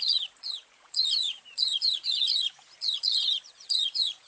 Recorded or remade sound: remade